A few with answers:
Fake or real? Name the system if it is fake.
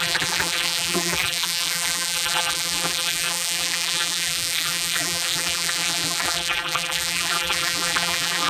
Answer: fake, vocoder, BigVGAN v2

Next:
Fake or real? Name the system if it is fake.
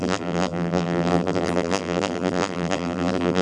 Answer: fake, vocoder, BigVGAN v2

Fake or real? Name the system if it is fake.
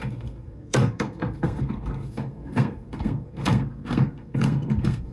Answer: fake, codec, SNAC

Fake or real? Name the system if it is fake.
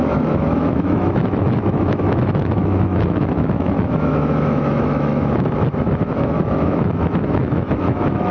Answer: fake, autoencoder, DAC-VAE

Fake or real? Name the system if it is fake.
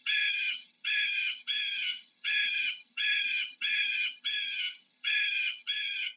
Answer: fake, vocoder, HiFi-GAN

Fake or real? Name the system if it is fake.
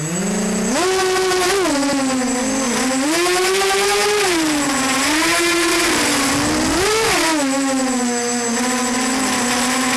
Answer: real